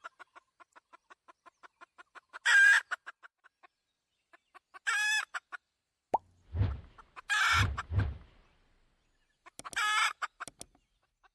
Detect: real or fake real